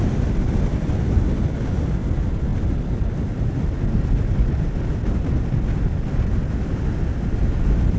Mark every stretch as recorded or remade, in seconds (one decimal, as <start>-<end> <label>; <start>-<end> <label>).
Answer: 0.0-8.0 recorded